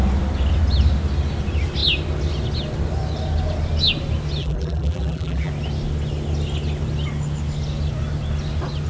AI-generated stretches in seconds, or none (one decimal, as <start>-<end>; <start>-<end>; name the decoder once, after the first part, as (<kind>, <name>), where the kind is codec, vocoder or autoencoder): 4.4-5.5 (vocoder, BigVGAN v2)